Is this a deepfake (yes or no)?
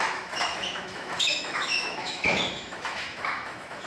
yes